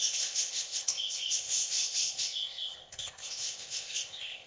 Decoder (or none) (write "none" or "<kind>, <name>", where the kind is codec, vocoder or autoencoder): codec, ZipCodec